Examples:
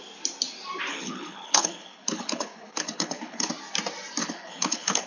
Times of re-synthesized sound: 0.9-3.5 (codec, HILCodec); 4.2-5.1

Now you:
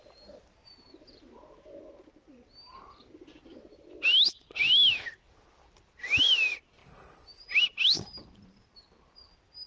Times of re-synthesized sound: none

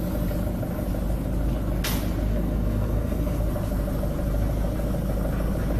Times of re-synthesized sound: 2.3-3.4 (codec, SNAC)

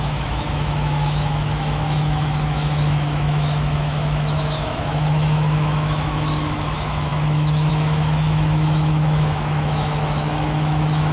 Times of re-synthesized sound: 0.0-11.1 (autoencoder, DAC-VAE)

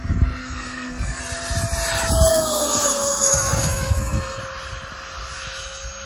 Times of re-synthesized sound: 0.4-1.2 (codec, SNAC); 2.3-4.4